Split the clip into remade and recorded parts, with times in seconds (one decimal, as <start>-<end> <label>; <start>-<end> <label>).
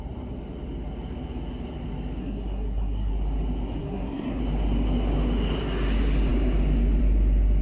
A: 0.0-2.2 recorded; 2.2-3.1 remade; 3.1-3.8 recorded; 3.8-4.4 remade; 4.4-7.6 recorded